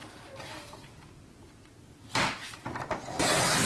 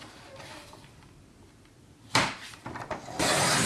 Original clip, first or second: first